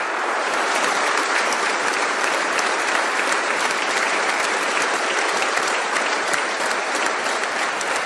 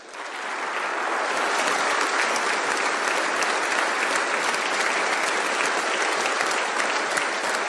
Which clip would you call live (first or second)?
second